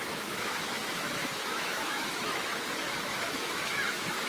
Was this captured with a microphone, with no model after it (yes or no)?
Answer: no